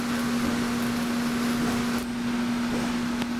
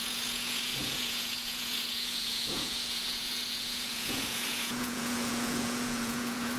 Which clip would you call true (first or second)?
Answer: first